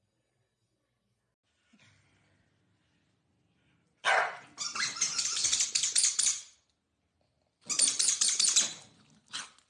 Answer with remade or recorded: recorded